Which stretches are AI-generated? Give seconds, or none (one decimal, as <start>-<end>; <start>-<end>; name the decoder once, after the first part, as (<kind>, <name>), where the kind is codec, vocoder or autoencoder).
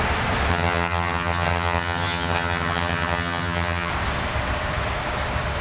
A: 0.5-3.9 (vocoder, HiFi-GAN)